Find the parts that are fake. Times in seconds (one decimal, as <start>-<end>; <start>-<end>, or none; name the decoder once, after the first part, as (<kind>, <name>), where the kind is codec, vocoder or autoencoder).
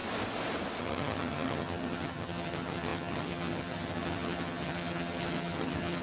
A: 0.8-6.0 (vocoder, HiFi-GAN)